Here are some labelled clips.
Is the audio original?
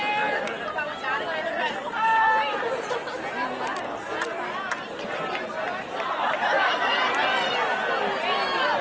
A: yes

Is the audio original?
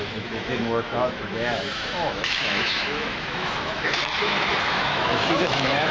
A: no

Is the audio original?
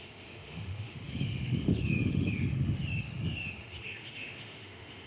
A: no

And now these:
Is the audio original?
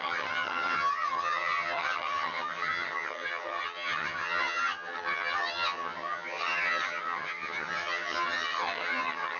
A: no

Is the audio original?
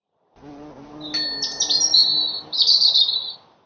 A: yes